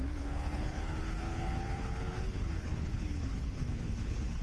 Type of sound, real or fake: fake